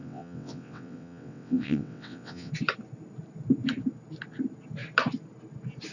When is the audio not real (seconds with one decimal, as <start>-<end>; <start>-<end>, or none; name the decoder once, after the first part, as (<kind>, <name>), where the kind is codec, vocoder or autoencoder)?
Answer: 0.0-2.5 (vocoder, WaveNeXt)